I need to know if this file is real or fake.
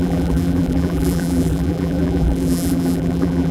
fake